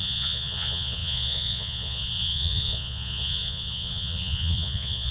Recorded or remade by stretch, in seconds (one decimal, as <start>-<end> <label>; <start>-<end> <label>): 0.0-5.1 remade